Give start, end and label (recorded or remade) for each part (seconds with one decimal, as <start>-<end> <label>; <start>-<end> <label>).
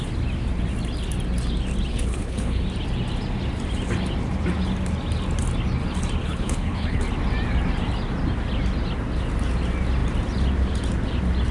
0.0-1.9 recorded; 1.9-2.6 remade; 2.6-6.2 recorded; 6.2-7.0 remade; 7.0-11.5 recorded